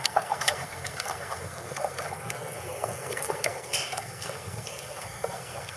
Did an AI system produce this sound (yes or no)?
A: yes